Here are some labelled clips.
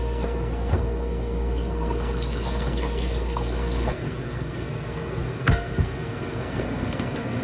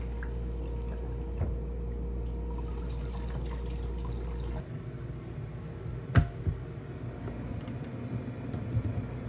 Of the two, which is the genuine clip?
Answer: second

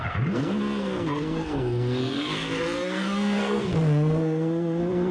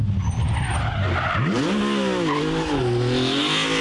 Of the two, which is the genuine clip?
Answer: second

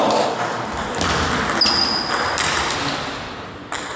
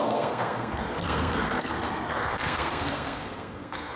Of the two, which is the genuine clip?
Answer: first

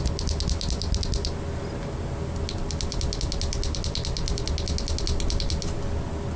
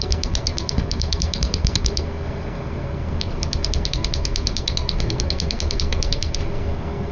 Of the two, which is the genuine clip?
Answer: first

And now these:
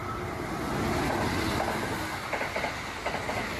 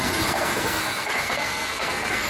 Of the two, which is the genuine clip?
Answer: first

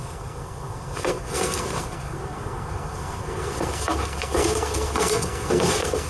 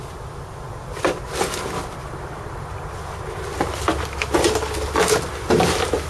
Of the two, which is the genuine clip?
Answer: second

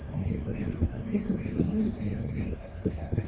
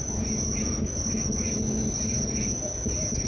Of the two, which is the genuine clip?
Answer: second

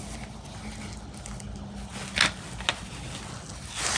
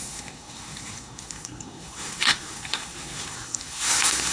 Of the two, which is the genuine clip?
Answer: first